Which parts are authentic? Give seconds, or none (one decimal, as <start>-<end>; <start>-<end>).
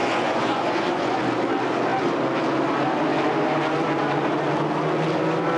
1.2-5.6